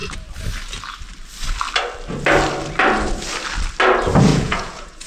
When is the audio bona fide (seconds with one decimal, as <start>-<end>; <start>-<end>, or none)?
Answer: 0.0-4.3